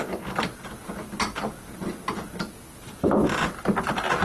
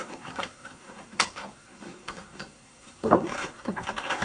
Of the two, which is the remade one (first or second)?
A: second